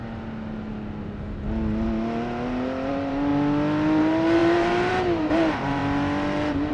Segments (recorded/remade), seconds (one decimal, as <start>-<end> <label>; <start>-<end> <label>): 0.0-2.9 recorded; 2.9-3.3 remade; 3.3-4.0 recorded; 4.0-5.8 remade; 5.8-6.7 recorded